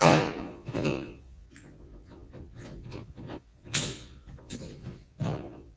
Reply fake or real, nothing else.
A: fake